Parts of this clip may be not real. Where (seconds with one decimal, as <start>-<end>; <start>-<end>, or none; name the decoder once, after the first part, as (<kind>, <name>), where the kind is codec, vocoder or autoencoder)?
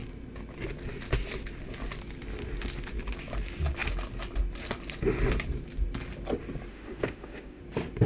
6.7-7.6 (autoencoder, DAC-VAE)